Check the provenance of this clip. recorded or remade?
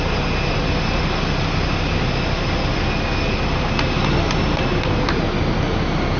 recorded